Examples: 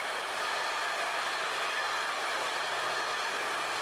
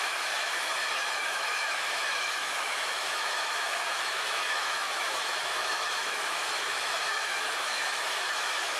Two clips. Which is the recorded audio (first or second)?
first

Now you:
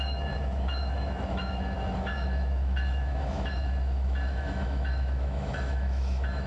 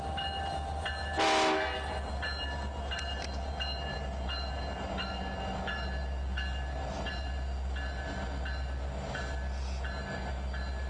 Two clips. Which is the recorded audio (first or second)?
second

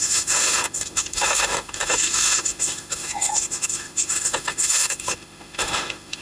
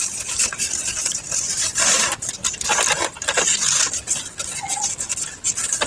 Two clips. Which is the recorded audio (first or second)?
second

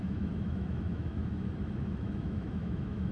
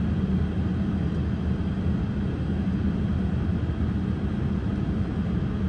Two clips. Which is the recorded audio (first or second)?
second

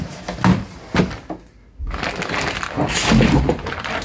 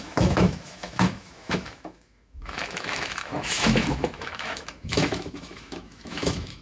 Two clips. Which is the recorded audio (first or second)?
first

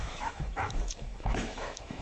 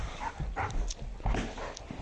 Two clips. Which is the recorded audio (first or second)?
second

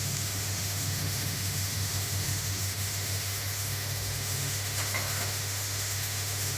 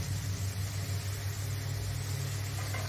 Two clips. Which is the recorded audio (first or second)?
second